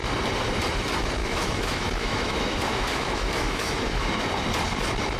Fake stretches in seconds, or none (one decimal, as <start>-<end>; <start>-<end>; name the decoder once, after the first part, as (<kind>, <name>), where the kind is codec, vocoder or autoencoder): 1.2-4.3 (autoencoder, DAC-VAE)